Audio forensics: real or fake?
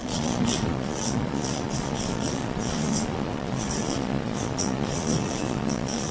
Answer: fake